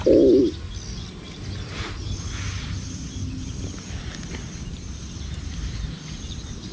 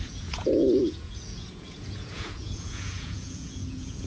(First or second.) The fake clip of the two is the second